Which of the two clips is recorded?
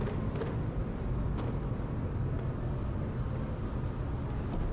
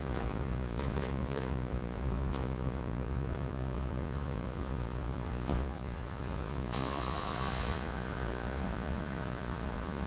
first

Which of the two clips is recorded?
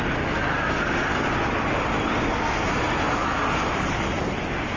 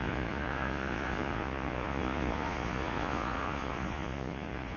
first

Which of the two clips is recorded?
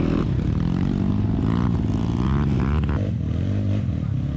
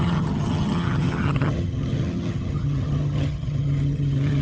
first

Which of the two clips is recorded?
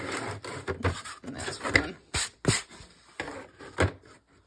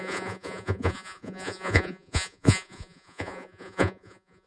first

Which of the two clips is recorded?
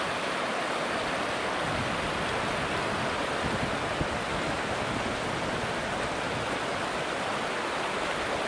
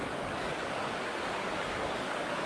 first